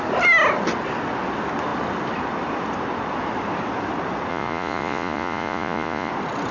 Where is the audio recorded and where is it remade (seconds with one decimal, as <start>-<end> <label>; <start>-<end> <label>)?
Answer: 0.0-4.3 recorded; 4.3-6.1 remade; 6.1-6.5 recorded